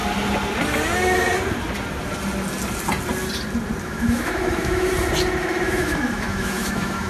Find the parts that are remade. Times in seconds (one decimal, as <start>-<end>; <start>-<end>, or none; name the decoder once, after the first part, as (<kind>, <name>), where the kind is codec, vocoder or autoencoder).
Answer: 3.8-4.9 (autoencoder, DAC-VAE); 5.4-7.1